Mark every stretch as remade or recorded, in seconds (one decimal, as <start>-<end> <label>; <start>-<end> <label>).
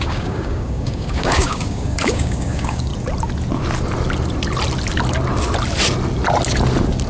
0.0-2.9 remade; 2.9-7.1 recorded